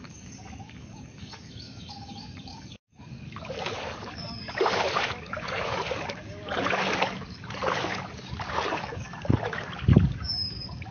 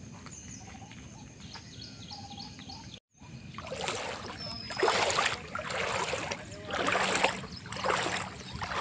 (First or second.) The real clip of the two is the second